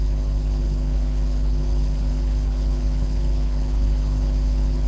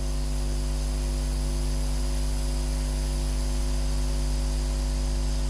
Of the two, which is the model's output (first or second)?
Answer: first